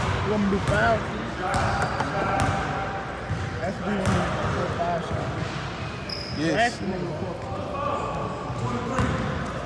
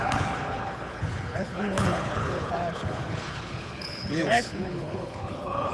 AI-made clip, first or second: second